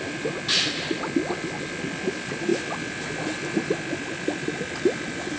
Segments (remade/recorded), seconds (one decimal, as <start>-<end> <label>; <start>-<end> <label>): 0.0-5.4 recorded